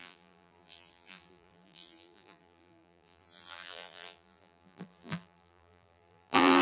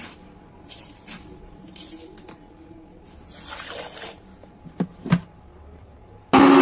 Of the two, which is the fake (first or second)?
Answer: first